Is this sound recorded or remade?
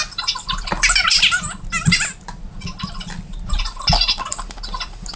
recorded